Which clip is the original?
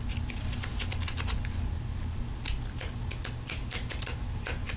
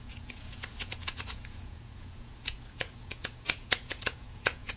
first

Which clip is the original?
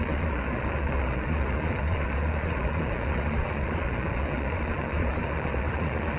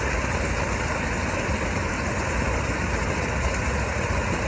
second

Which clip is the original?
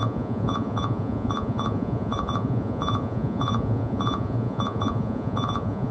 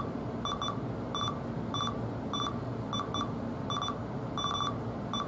second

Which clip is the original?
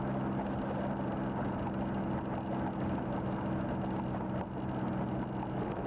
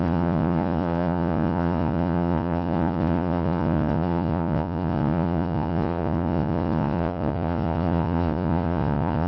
first